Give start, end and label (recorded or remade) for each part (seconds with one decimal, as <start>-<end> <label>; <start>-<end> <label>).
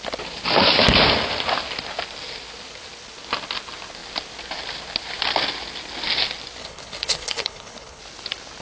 0.0-6.6 recorded; 6.6-8.0 remade; 8.0-8.6 recorded